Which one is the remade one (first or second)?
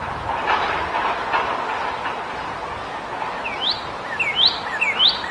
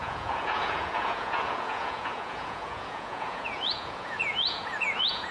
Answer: second